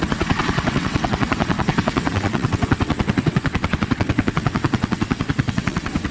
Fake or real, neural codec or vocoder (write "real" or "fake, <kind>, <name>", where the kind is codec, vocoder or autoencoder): fake, vocoder, WaveNeXt